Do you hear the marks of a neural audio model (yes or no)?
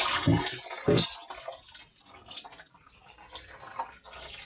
no